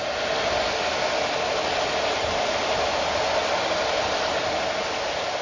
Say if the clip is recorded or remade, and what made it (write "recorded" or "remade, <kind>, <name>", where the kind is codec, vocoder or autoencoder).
recorded